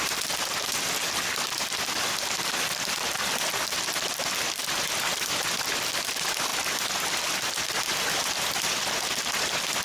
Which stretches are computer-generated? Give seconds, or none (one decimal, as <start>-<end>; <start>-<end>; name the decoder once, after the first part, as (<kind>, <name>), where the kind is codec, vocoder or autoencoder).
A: none